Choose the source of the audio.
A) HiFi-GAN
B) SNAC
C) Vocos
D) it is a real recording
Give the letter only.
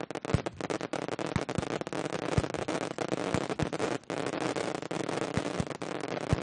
D